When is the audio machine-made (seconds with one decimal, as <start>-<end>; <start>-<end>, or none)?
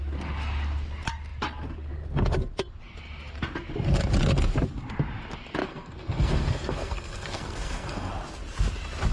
5.6-8.1